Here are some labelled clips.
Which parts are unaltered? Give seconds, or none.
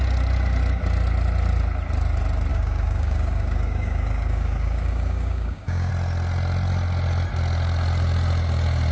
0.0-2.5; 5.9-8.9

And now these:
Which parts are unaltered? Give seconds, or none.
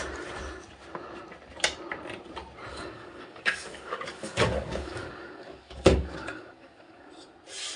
0.0-2.7; 7.1-7.8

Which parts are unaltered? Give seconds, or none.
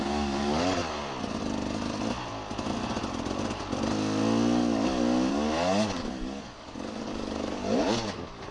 0.8-5.3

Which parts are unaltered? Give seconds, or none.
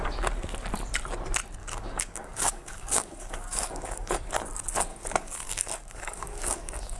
0.0-1.6; 4.3-4.9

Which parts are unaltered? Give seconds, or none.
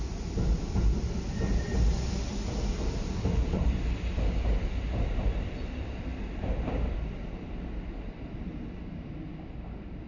0.0-10.1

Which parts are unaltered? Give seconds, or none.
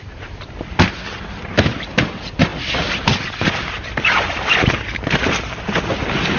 0.0-6.4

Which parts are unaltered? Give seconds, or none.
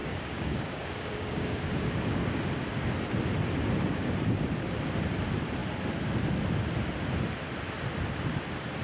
2.2-8.8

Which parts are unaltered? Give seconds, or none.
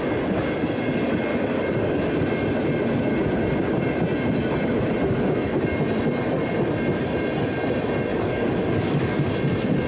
0.0-1.3; 2.0-8.1; 9.2-9.9